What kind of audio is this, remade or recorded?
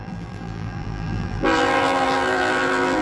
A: remade